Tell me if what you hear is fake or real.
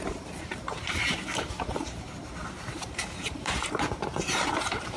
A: fake